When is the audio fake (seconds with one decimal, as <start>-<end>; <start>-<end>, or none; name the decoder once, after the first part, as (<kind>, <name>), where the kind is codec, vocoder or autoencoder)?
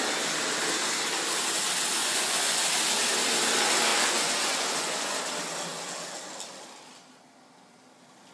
2.0-2.6 (vocoder, Vocos); 3.9-5.2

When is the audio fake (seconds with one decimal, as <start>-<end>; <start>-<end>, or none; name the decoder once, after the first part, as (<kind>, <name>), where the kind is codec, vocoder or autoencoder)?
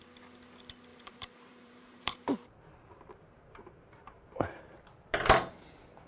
0.9-4.6 (vocoder, BigVGAN v2)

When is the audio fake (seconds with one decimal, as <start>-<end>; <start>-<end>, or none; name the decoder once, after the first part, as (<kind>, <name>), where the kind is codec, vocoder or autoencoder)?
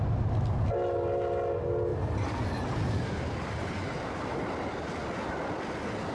1.9-4.4 (vocoder, BigVGAN v2)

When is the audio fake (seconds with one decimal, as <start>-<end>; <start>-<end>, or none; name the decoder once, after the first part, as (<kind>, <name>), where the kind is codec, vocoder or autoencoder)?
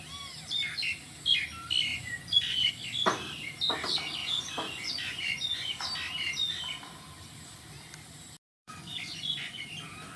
1.9-2.7 (vocoder, Vocos); 4.2-5.7; 8.5-9.6